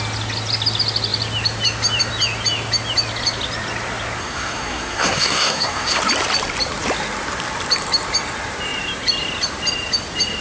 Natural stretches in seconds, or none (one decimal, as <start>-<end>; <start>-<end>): 0.0-4.2; 6.0-10.4